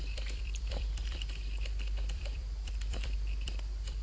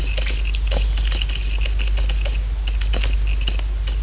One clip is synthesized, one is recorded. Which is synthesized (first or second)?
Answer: first